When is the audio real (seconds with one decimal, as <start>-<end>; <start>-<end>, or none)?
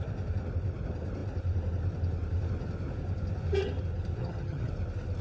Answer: 0.0-4.2; 4.7-5.2